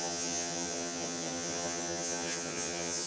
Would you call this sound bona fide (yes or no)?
no